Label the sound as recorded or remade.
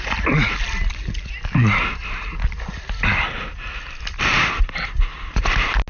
recorded